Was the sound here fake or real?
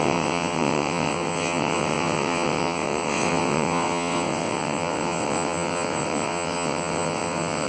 fake